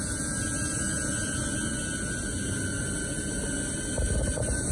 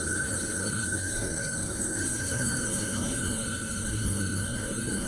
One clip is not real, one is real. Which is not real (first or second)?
second